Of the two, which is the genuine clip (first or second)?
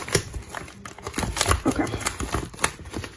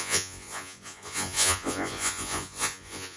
first